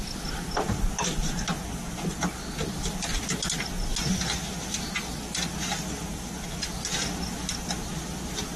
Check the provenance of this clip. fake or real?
real